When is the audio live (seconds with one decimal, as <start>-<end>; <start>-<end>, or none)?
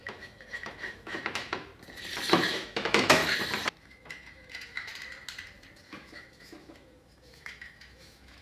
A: 1.7-2.5; 3.2-3.8; 4.9-5.8